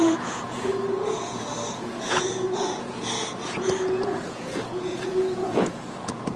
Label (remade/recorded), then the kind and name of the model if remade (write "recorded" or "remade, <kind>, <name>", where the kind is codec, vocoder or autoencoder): remade, vocoder, Vocos